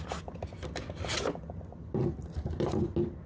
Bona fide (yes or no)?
yes